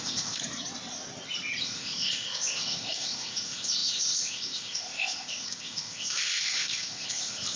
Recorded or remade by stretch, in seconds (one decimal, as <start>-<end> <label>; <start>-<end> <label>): 0.0-0.4 remade; 0.4-1.6 recorded; 1.6-7.6 remade

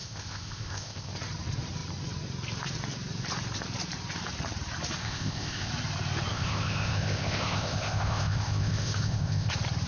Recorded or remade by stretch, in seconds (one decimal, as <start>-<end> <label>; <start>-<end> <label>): 0.0-1.1 remade; 1.1-5.0 recorded; 5.0-5.7 remade; 5.7-6.3 recorded; 6.3-9.5 remade; 9.5-9.9 recorded

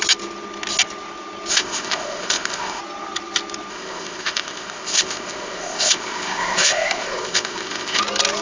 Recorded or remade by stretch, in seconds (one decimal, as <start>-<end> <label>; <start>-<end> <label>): 0.0-1.5 recorded; 1.5-2.8 remade; 2.8-3.7 recorded; 3.7-8.0 remade; 8.0-8.4 recorded

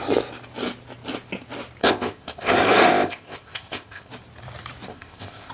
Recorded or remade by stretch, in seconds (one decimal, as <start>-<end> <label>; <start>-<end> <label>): 0.0-1.8 recorded; 1.8-2.5 remade; 2.5-2.9 recorded; 2.9-4.1 remade; 4.1-4.9 recorded; 4.9-5.5 remade

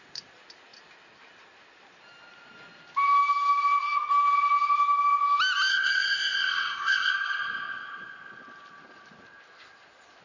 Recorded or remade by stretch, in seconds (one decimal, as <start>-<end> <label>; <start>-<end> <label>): 0.0-5.7 recorded; 5.7-7.1 remade; 7.1-10.2 recorded

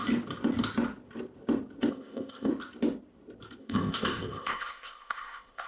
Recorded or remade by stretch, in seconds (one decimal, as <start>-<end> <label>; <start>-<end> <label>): 0.0-1.9 recorded; 1.9-2.5 remade; 2.5-3.6 recorded; 3.6-5.7 remade